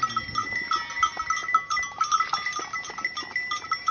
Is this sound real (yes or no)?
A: yes